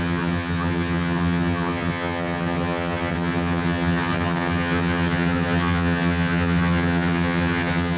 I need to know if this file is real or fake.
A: fake